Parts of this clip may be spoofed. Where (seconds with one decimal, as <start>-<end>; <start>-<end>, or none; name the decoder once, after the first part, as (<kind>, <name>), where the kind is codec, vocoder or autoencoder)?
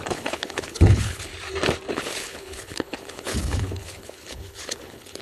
0.0-1.3 (codec, HILCodec); 1.9-5.2